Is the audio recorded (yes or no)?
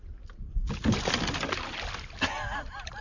yes